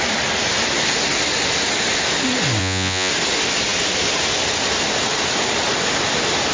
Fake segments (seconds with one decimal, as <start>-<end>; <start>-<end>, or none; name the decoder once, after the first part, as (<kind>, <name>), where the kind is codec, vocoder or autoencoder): 2.6-3.1 (vocoder, Vocos)

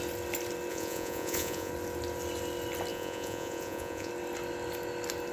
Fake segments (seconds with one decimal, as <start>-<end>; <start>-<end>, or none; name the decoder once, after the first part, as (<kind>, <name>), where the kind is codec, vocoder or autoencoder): 0.7-1.7 (vocoder, Vocos); 2.9-4.1

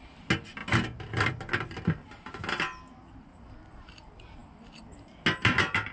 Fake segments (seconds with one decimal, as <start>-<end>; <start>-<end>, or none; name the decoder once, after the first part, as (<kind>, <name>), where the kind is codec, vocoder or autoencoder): none

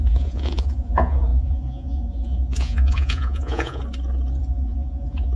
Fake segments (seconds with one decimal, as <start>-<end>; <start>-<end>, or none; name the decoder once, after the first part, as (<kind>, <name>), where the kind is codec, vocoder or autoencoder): 0.0-3.8 (vocoder, Vocos); 4.4-5.4